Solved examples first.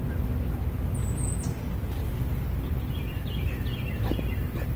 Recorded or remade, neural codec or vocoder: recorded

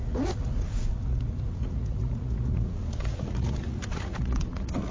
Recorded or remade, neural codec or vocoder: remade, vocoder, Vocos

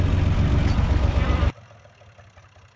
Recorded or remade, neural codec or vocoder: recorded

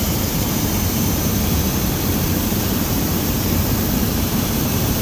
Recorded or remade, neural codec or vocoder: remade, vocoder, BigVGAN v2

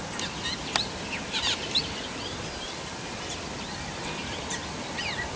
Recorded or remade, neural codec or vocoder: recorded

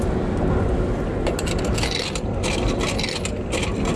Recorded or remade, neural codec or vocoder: recorded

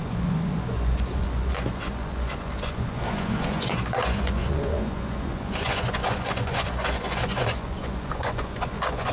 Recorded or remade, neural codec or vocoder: remade, vocoder, Vocos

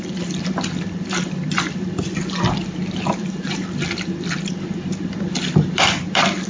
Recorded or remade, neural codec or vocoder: remade, vocoder, BigVGAN v2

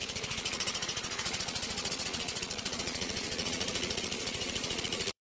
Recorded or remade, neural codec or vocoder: remade, vocoder, Vocos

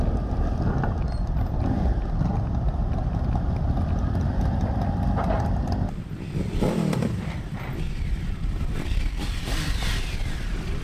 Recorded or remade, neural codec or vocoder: remade, vocoder, BigVGAN v2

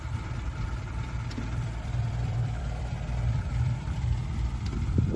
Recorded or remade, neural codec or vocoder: remade, vocoder, BigVGAN v2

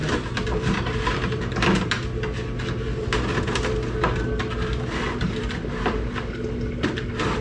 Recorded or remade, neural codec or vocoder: recorded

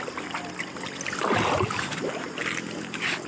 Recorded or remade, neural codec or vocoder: recorded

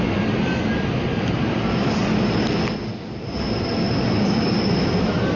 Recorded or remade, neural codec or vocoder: recorded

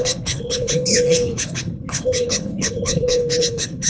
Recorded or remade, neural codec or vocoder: remade, codec, HILCodec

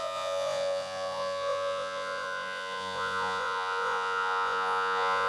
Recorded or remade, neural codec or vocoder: remade, vocoder, Vocos